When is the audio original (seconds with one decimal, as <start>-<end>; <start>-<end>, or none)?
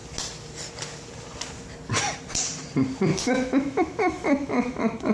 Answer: 0.0-3.1